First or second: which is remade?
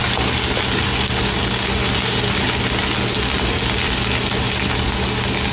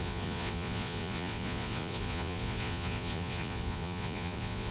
second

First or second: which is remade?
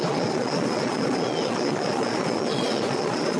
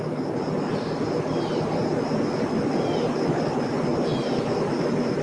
first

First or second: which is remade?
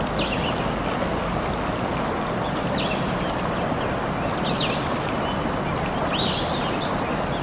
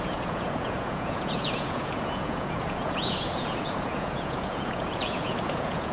second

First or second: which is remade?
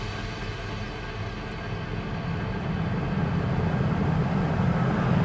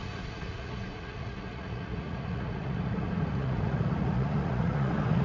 second